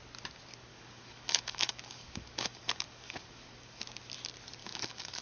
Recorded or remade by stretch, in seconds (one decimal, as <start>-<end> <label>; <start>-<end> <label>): 0.0-0.7 recorded; 0.7-3.8 remade; 3.8-4.6 recorded; 4.6-5.2 remade